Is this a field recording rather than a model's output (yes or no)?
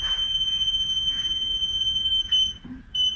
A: no